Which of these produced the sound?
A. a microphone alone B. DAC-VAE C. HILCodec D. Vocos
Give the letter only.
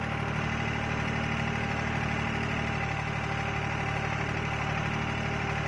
A